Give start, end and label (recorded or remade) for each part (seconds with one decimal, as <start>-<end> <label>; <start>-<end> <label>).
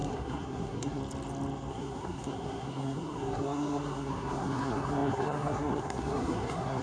0.0-1.0 remade; 1.0-1.7 recorded; 1.7-6.8 remade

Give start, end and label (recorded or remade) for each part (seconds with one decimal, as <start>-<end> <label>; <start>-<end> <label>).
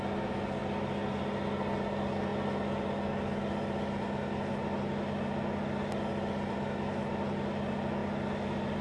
0.0-8.8 recorded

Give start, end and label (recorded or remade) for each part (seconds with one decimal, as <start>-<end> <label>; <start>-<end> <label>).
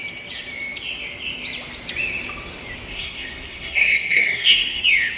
0.0-2.9 recorded; 2.9-4.8 remade; 4.8-5.2 recorded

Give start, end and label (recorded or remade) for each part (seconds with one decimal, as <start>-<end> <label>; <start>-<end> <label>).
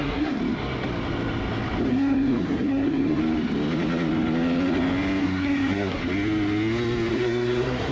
0.0-0.4 remade; 0.4-1.9 recorded; 1.9-3.2 remade; 3.2-5.2 recorded; 5.2-6.0 remade; 6.0-7.1 recorded; 7.1-7.9 remade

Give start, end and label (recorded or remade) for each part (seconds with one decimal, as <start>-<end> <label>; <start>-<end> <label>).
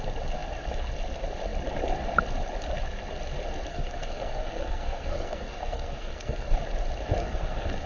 0.0-3.7 recorded; 3.7-6.6 remade; 6.6-7.2 recorded; 7.2-7.9 remade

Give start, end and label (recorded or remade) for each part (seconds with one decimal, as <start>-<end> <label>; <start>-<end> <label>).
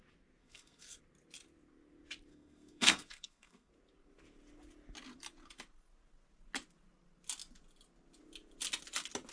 0.0-0.4 recorded; 0.4-1.0 remade; 1.0-2.3 recorded; 2.3-3.7 remade; 3.7-9.3 recorded